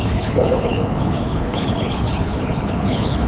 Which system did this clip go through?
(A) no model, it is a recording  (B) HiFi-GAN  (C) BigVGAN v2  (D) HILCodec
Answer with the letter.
D